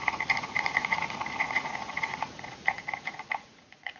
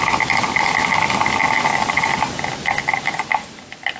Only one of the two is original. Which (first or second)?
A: second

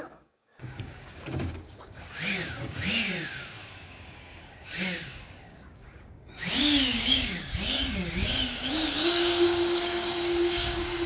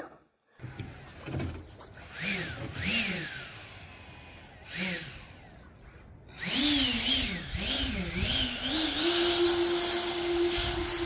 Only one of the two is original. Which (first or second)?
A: second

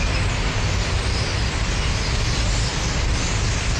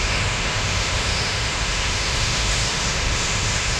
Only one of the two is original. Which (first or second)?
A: first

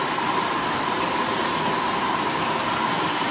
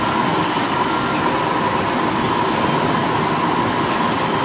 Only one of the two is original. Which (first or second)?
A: second